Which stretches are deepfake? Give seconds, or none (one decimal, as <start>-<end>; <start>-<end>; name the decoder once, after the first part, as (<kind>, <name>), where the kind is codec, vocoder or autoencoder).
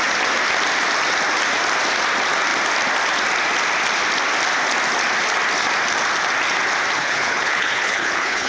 7.0-8.5 (codec, HILCodec)